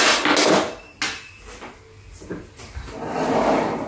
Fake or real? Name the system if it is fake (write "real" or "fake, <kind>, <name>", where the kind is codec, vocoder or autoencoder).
real